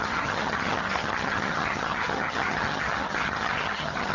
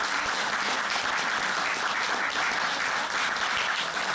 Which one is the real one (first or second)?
second